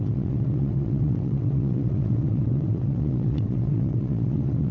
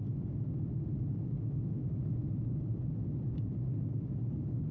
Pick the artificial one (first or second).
first